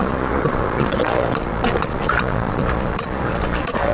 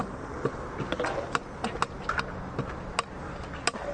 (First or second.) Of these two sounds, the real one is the second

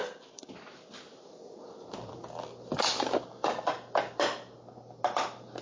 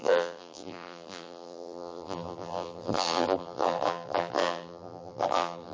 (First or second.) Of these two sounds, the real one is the first